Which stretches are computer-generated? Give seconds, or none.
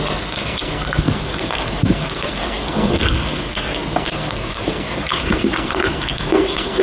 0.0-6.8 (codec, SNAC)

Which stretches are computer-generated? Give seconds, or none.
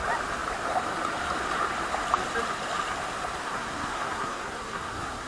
3.4-5.3 (codec, SNAC)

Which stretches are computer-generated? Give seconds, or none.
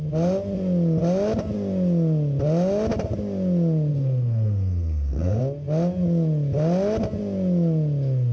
3.9-5.4 (codec, SNAC)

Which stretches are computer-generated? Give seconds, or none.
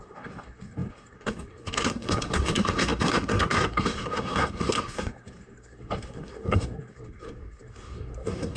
0.0-8.6 (codec, SNAC)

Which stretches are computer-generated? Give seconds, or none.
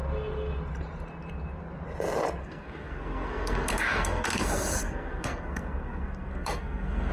2.4-7.1 (codec, SNAC)